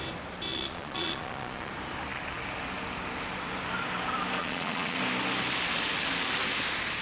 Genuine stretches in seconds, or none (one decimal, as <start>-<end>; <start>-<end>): 0.0-0.5; 1.7-4.4; 5.0-7.0